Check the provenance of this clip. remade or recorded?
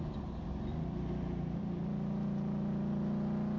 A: recorded